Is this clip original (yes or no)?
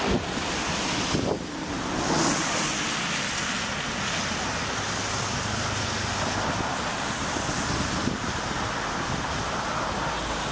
yes